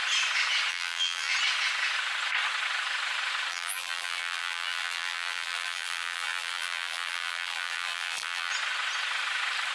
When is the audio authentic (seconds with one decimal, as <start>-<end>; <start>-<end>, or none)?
0.0-0.7; 1.3-3.5; 8.5-9.7